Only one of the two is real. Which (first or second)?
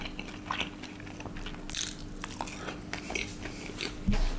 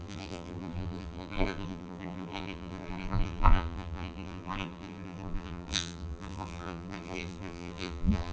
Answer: first